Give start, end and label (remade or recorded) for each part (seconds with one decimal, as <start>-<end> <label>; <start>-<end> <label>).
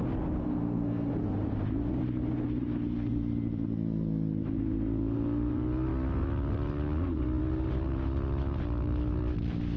0.0-0.4 recorded; 0.4-1.1 remade; 1.1-9.8 recorded